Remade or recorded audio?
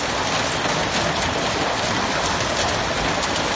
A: recorded